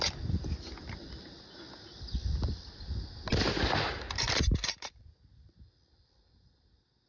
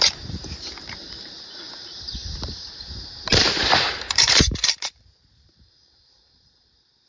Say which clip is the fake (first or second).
second